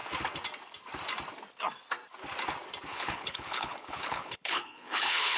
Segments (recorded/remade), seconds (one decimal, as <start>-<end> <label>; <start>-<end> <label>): 0.0-2.9 recorded; 2.9-5.4 remade

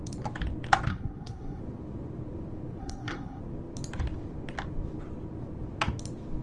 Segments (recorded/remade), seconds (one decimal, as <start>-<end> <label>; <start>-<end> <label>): 0.0-0.9 recorded; 0.9-1.6 remade; 1.6-2.8 recorded; 2.8-3.4 remade; 3.4-6.4 recorded

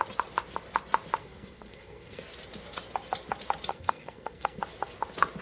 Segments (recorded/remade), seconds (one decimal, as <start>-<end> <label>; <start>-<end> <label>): 0.0-1.2 recorded; 1.2-2.2 remade; 2.2-3.7 recorded; 3.7-4.6 remade; 4.6-5.4 recorded

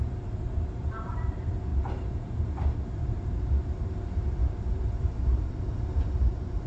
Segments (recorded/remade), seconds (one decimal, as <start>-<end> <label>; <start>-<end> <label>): 0.0-6.7 remade

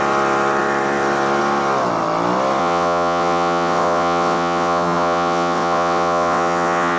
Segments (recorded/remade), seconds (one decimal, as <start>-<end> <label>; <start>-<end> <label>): 0.0-2.6 recorded; 2.6-7.0 remade

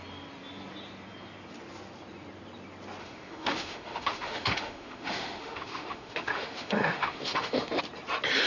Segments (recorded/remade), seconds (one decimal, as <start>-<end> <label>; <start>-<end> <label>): 0.0-3.0 recorded; 3.0-7.8 remade; 7.8-8.5 recorded

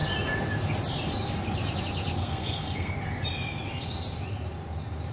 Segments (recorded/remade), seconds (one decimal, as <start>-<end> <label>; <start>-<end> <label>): 0.0-2.2 recorded; 2.2-2.9 remade; 2.9-5.1 recorded

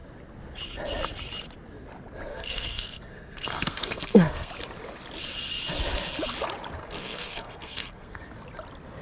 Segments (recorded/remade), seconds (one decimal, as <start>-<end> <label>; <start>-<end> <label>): 0.0-2.3 recorded; 2.3-4.5 remade; 4.5-6.8 recorded; 6.8-8.2 remade; 8.2-9.0 recorded